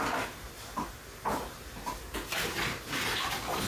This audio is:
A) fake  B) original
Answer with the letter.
B